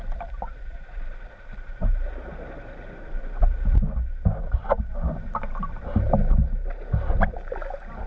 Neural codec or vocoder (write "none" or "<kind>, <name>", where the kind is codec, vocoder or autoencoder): none